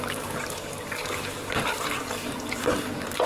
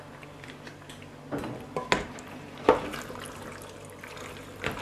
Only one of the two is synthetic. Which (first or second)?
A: first